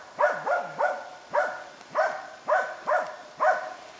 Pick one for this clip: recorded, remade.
recorded